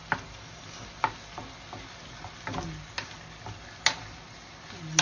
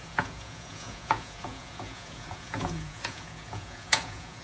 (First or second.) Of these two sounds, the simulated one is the second